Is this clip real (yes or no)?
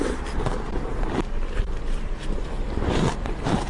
no